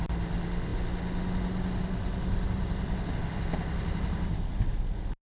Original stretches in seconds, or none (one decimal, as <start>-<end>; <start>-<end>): 0.0-5.3